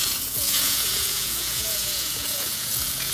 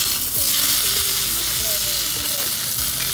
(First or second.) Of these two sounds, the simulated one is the first